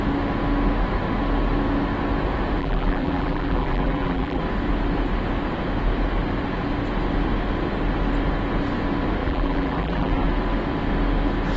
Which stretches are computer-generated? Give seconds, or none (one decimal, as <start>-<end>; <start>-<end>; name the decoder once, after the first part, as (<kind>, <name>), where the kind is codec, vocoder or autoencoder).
2.6-4.4 (vocoder, BigVGAN v2); 9.2-10.2